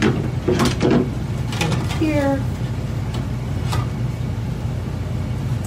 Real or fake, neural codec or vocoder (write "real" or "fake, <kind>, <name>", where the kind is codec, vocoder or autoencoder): real